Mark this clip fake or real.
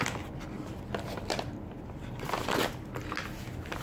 real